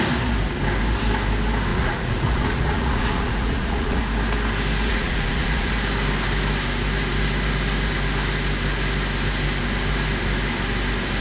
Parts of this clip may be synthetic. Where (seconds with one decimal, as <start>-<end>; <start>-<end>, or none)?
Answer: 1.7-4.0; 4.9-5.7